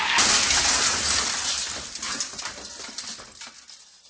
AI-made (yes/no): no